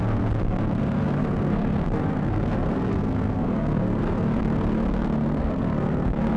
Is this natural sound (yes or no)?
no